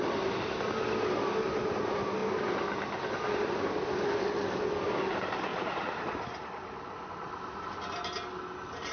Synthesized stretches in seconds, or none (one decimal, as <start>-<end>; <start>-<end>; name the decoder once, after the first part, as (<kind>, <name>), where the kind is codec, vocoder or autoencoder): 5.5-6.0 (vocoder, Vocos)